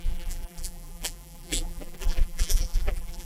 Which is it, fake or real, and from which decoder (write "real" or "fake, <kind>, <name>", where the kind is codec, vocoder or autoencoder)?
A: fake, vocoder, BigVGAN v2